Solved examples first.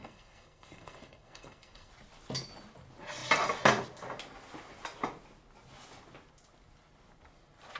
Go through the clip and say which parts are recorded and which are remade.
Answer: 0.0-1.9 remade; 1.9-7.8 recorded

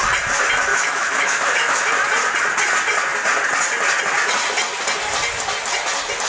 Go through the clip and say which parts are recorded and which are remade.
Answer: 0.0-0.7 recorded; 0.7-1.9 remade; 1.9-6.3 recorded